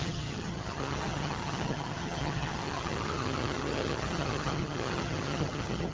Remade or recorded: remade